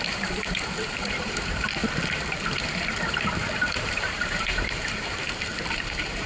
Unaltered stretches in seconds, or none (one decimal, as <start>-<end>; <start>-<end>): 1.8-2.6